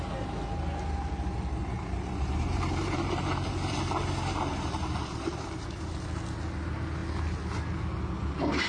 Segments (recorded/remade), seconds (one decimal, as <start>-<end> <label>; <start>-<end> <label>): 0.0-1.6 recorded; 1.6-5.9 remade; 5.9-8.7 recorded